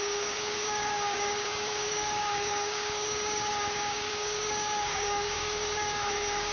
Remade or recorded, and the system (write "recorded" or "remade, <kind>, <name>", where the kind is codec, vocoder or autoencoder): remade, codec, DAC